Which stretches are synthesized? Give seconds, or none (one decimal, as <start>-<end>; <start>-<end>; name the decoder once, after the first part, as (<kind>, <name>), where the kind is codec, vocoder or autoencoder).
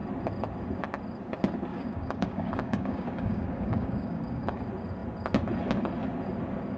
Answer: 1.7-4.6 (codec, DAC)